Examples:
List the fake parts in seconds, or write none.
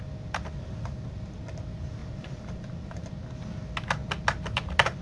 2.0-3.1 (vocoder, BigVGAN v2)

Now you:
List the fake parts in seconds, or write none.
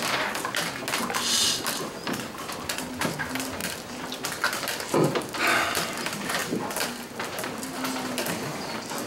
none